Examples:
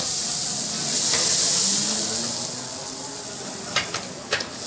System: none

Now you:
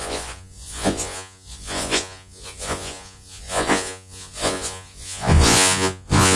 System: vocoder, Vocos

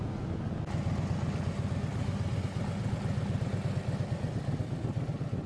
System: none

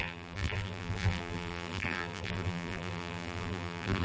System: vocoder, BigVGAN v2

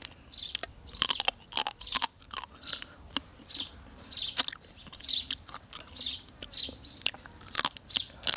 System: none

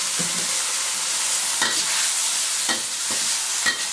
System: none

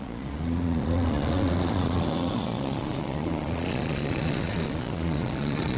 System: vocoder, Vocos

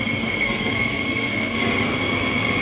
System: codec, SNAC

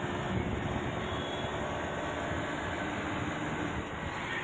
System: none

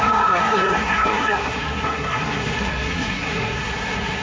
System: codec, SNAC